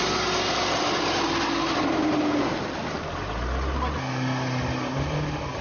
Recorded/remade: recorded